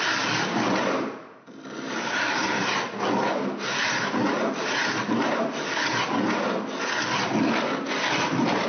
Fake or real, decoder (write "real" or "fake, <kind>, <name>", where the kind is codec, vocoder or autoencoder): real